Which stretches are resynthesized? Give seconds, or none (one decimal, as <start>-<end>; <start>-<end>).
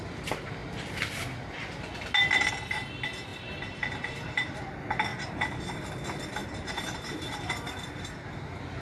3.3-4.6; 5.1-5.6; 6.4-7.5